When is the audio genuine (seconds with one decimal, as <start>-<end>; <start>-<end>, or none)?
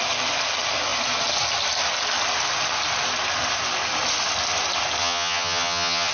0.0-5.0